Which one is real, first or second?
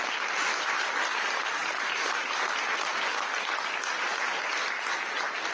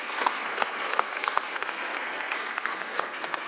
first